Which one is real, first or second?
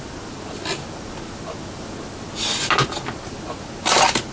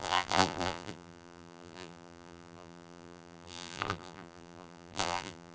first